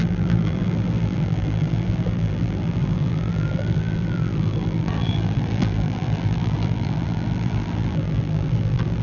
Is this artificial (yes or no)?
yes